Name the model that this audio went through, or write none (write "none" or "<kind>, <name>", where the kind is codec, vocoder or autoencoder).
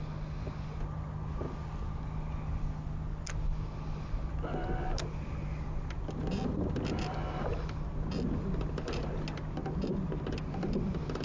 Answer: none